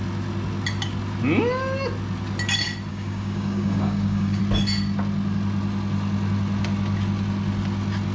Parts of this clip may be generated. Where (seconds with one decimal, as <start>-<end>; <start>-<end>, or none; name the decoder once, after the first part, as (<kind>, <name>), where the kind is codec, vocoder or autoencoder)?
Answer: 2.9-4.4 (codec, DAC)